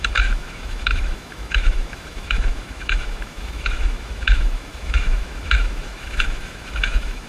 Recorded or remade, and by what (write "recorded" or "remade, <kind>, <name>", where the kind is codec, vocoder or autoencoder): remade, autoencoder, DAC-VAE